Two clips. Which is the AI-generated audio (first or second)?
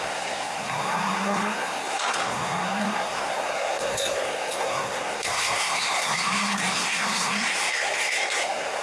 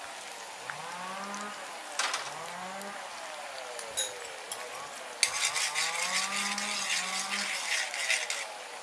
first